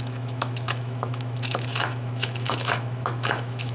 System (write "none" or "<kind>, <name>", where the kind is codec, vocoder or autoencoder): autoencoder, DAC-VAE